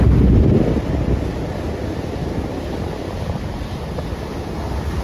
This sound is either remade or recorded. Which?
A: recorded